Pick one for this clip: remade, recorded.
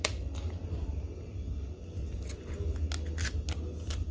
recorded